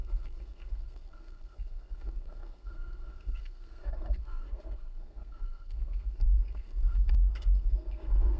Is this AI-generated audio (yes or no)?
yes